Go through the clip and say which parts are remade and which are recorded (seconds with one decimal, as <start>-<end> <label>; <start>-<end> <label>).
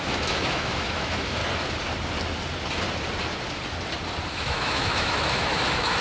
0.0-1.4 remade; 1.4-4.3 recorded; 4.3-6.0 remade